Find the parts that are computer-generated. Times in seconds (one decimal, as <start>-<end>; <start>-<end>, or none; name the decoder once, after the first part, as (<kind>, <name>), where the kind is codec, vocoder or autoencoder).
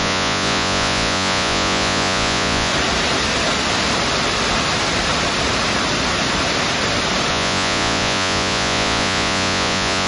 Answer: 0.0-2.7 (vocoder, Vocos); 7.3-10.1